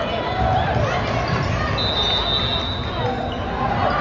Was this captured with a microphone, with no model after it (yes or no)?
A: yes